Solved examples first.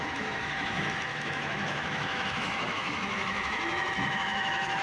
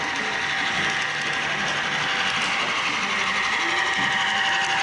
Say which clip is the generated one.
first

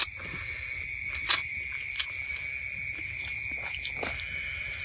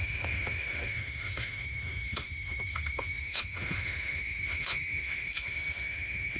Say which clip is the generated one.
second